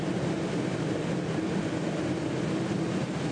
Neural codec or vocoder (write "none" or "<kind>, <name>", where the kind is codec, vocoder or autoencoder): none